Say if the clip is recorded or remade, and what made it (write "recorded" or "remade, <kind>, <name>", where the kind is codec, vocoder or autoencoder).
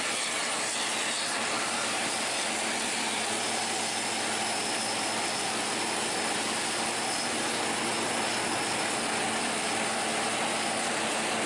recorded